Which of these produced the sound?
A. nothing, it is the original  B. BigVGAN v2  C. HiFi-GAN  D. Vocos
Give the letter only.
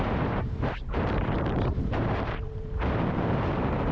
B